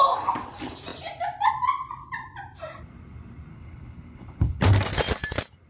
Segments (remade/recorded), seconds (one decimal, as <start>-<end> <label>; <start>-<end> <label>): 0.0-3.5 recorded; 3.5-4.6 remade; 4.6-5.7 recorded